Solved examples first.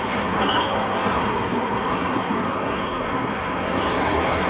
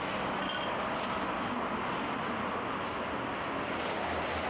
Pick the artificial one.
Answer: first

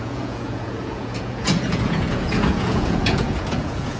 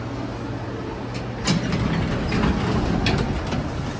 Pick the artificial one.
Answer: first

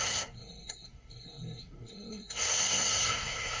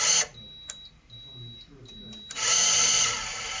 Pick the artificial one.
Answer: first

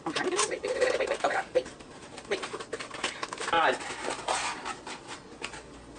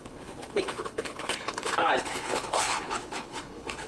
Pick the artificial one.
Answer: second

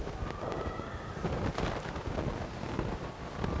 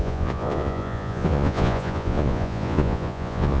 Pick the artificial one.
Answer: second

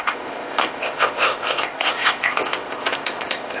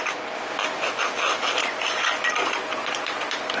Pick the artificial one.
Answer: first